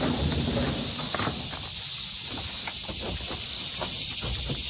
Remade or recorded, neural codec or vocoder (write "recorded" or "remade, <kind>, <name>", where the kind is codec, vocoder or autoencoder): recorded